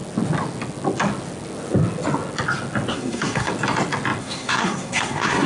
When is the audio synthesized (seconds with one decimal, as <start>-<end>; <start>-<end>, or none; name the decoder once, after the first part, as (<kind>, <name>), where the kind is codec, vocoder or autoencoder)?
2.9-3.5 (codec, SNAC); 4.2-5.5